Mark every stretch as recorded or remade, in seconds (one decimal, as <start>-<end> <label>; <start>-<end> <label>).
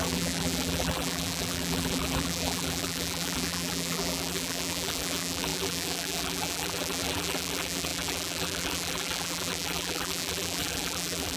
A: 0.0-11.4 remade